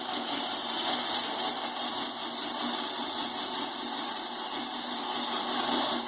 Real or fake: real